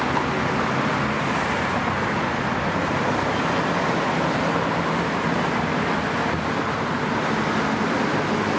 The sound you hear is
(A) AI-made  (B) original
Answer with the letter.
B